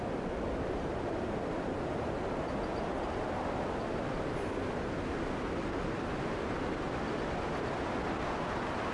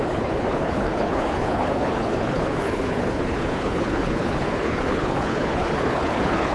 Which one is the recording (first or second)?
first